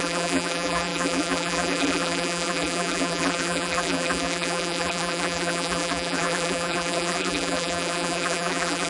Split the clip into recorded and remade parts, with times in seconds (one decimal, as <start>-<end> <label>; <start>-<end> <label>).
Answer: 0.0-8.9 remade